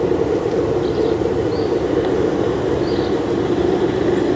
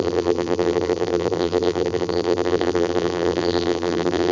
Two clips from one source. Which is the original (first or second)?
first